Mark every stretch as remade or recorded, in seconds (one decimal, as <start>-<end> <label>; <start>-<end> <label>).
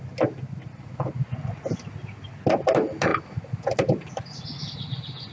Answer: 0.0-5.3 recorded